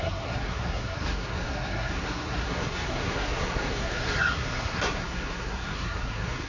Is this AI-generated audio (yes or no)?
yes